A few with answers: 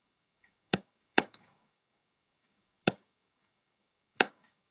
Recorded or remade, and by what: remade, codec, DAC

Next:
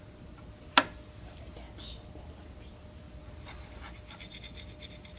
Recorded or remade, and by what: recorded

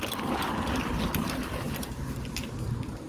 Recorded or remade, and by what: recorded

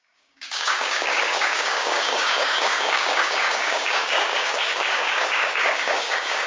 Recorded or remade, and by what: remade, codec, DAC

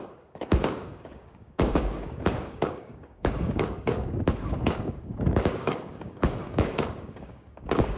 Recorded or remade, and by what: remade, codec, DAC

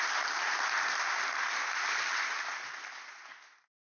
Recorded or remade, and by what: recorded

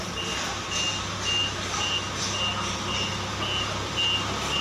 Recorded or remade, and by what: recorded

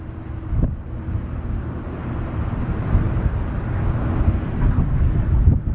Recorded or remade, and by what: recorded